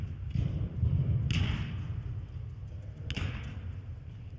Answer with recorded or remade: recorded